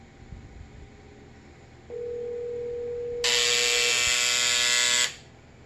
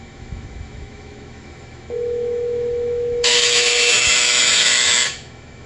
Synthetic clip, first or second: second